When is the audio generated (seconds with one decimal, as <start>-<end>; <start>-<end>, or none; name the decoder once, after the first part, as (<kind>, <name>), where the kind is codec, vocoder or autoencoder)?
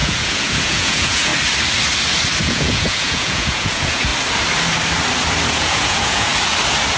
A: 0.0-1.3 (vocoder, Vocos); 2.4-4.1; 5.5-6.3